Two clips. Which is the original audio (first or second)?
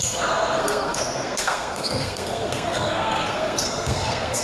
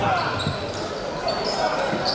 second